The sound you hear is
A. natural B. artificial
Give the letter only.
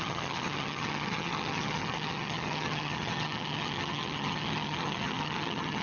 B